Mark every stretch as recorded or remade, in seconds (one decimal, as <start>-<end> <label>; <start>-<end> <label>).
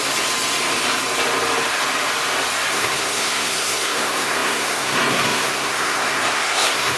0.0-2.7 recorded; 2.7-7.0 remade